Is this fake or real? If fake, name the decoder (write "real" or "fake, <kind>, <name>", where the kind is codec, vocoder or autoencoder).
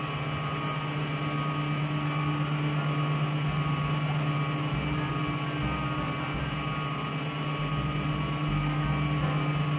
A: real